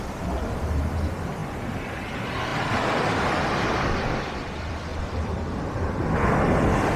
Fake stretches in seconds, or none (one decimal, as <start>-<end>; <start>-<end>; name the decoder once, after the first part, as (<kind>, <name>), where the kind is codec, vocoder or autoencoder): 0.0-7.0 (vocoder, BigVGAN v2)